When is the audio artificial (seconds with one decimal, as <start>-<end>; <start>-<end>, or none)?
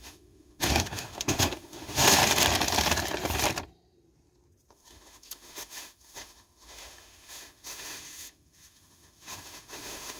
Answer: 0.0-2.2; 4.7-10.2